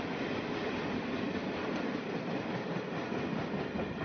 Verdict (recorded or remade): recorded